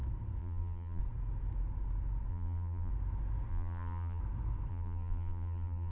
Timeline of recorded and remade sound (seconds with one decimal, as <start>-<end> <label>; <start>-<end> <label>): 0.0-0.4 recorded; 0.4-1.0 remade; 1.0-2.3 recorded; 2.3-2.9 remade; 2.9-3.5 recorded; 3.5-4.2 remade; 4.2-4.7 recorded; 4.7-5.9 remade